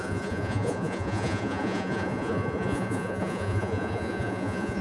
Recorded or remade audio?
remade